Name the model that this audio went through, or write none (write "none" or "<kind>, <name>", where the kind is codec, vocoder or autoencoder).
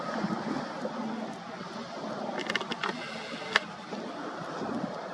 none